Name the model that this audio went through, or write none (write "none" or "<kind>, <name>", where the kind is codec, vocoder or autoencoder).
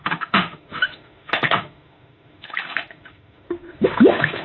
autoencoder, DAC-VAE